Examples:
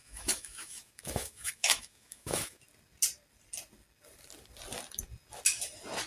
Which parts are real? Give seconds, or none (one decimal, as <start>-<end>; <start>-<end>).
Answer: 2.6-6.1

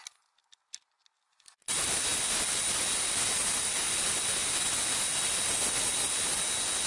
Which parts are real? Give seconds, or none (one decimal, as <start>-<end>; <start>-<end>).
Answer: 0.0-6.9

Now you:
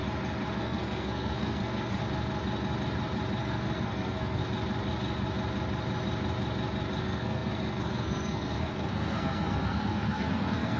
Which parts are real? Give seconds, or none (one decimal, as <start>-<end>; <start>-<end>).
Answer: 0.0-0.5; 2.0-3.4; 4.4-7.0

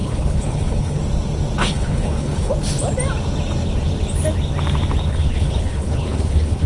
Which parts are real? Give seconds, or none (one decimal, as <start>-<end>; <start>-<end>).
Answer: 1.0-1.6; 2.5-5.1

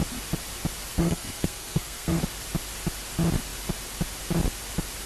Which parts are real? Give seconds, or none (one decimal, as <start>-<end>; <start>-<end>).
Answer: 0.0-0.9; 2.2-5.1